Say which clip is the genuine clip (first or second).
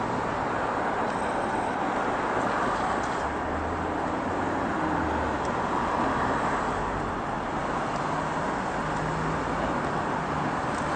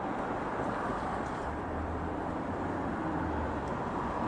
first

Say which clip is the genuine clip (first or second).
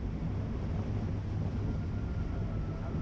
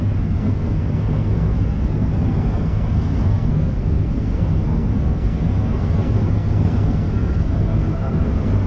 first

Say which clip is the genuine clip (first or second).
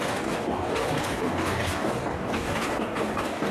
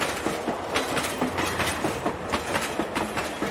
second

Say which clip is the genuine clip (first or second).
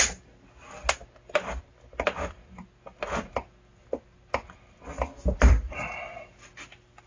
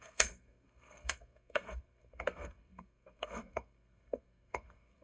first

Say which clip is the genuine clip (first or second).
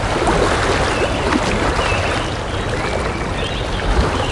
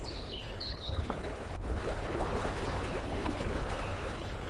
first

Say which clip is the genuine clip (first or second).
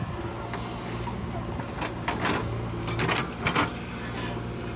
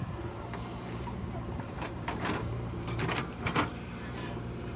first